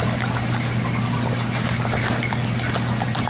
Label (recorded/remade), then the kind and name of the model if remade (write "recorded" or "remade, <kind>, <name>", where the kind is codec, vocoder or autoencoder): recorded